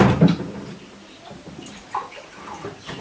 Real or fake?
fake